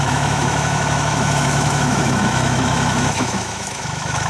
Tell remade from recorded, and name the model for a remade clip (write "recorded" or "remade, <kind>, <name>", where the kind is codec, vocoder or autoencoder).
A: remade, autoencoder, DAC-VAE